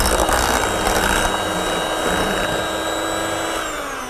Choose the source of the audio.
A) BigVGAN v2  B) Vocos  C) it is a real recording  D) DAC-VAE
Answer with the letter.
C